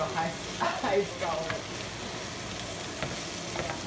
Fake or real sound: real